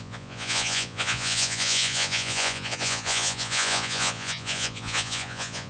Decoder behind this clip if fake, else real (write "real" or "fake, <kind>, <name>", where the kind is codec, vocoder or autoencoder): fake, vocoder, Vocos